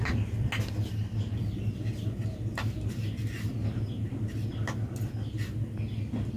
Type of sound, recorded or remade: recorded